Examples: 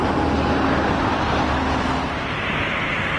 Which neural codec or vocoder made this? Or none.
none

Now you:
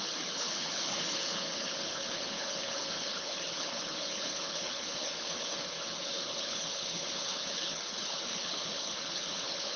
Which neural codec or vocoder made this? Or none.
codec, HILCodec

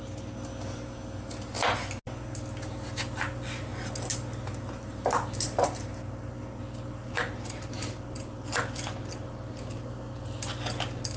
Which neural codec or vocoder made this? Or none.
none